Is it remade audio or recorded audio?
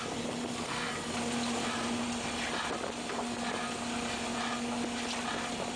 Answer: recorded